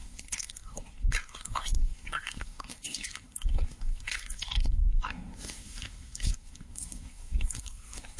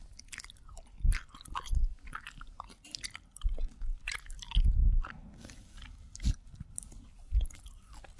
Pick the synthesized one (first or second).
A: first